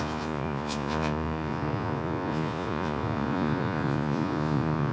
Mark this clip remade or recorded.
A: remade